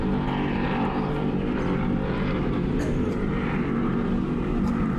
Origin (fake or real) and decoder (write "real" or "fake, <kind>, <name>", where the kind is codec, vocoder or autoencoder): fake, vocoder, BigVGAN v2